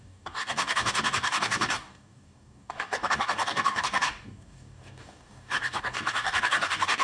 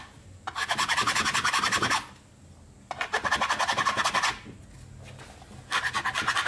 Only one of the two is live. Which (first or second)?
second